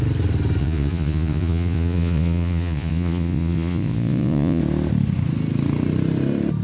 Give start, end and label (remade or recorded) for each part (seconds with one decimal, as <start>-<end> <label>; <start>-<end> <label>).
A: 0.0-0.6 recorded; 0.6-4.6 remade; 4.6-6.6 recorded